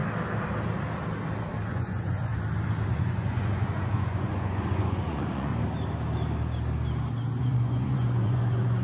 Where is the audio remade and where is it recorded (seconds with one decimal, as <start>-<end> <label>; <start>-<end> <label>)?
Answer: 0.0-1.7 recorded; 1.7-2.3 remade; 2.3-2.9 recorded; 2.9-5.5 remade; 5.5-7.4 recorded; 7.4-8.8 remade